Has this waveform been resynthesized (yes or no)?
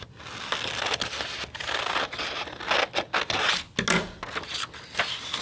no